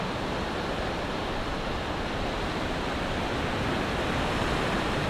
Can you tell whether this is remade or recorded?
recorded